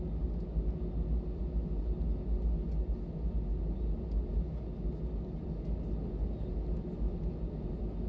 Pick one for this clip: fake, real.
real